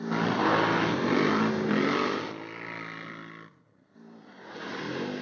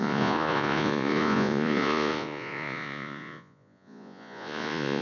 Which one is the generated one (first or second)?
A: second